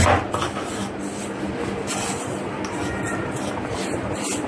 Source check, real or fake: real